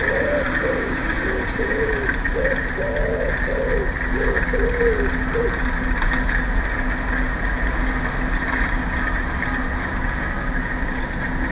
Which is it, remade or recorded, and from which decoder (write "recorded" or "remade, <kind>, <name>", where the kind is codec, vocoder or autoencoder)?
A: recorded